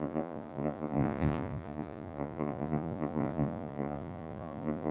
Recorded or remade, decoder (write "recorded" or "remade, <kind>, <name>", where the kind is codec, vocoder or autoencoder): remade, vocoder, Vocos